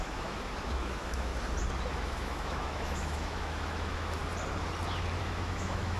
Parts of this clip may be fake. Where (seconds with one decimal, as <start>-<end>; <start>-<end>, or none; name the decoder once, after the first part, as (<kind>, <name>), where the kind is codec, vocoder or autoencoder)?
0.0-1.3 (autoencoder, DAC-VAE); 1.9-4.2; 5.2-6.0